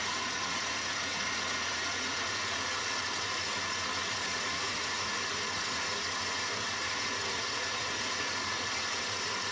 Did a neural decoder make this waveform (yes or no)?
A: yes